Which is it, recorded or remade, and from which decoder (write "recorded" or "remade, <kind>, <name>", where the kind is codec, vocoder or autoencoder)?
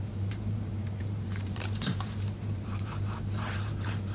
remade, vocoder, BigVGAN v2